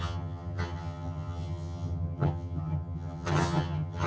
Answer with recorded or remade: remade